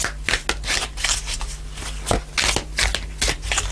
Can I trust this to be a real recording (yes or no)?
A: yes